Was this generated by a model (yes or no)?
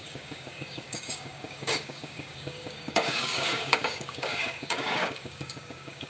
yes